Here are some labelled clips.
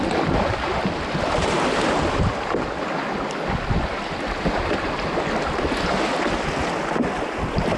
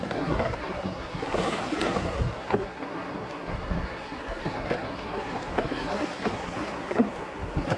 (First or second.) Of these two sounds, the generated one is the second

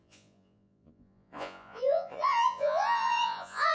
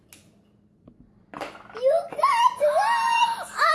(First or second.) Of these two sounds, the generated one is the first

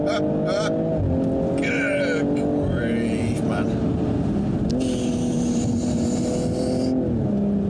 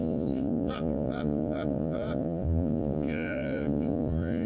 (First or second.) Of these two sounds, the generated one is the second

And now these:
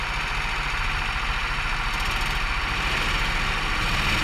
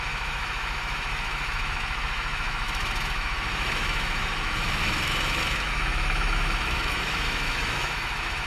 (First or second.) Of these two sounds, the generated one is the second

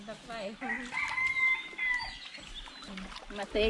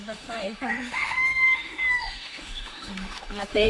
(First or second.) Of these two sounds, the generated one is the second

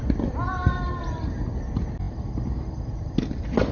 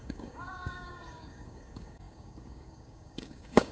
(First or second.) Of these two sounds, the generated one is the second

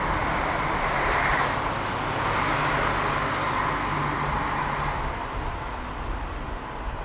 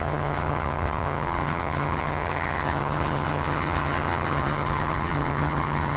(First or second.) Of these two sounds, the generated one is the second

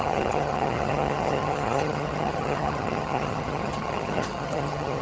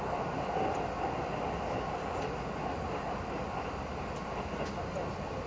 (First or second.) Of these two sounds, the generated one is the first